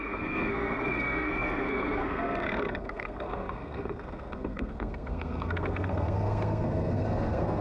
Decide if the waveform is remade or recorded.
remade